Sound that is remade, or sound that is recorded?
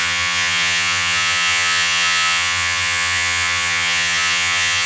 remade